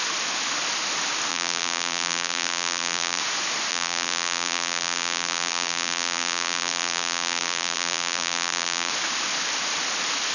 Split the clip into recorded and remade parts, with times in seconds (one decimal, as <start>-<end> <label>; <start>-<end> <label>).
0.0-1.3 recorded; 1.3-3.2 remade; 3.2-3.7 recorded; 3.7-8.9 remade; 8.9-10.3 recorded